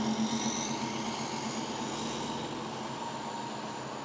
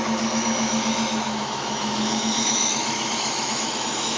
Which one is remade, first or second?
second